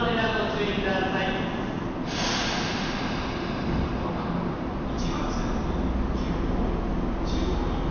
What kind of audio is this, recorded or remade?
recorded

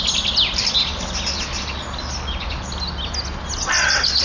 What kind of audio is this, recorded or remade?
recorded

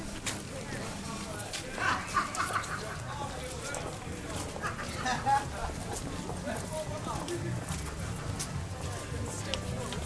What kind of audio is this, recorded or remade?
recorded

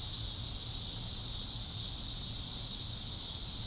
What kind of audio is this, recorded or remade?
recorded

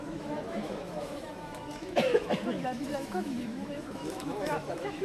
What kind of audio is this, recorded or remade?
remade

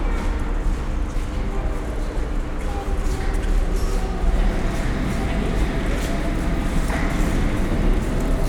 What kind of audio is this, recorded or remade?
recorded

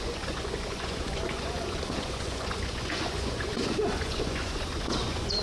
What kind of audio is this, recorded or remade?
remade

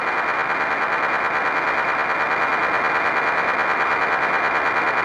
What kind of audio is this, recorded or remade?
recorded